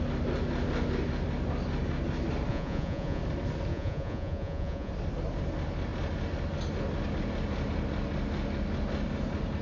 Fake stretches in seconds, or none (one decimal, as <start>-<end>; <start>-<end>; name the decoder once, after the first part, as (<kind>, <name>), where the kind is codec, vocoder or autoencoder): 2.5-3.2 (vocoder, Vocos); 3.7-4.9